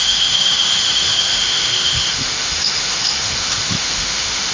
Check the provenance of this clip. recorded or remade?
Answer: remade